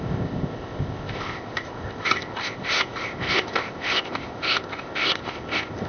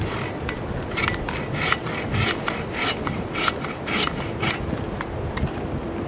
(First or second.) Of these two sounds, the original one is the second